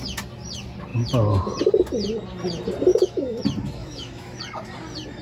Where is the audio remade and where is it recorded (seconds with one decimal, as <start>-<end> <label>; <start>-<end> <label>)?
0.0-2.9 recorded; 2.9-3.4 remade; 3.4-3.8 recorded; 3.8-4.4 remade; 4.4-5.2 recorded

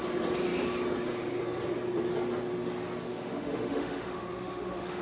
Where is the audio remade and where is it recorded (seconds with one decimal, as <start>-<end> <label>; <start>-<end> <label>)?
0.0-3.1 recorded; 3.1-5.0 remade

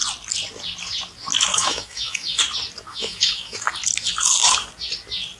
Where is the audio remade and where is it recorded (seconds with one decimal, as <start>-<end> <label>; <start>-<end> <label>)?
0.0-1.5 recorded; 1.5-2.4 remade; 2.4-2.9 recorded; 2.9-3.7 remade; 3.7-5.4 recorded

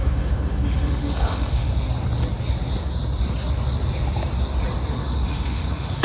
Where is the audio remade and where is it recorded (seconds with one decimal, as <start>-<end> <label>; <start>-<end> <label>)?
0.0-1.7 remade; 1.7-4.9 recorded; 4.9-6.0 remade